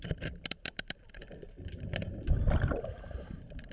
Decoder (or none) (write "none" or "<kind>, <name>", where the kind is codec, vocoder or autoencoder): vocoder, BigVGAN v2